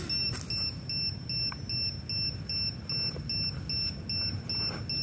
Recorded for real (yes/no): yes